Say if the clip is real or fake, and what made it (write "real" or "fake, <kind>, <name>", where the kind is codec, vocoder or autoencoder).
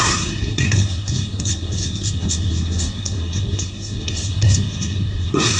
fake, codec, SNAC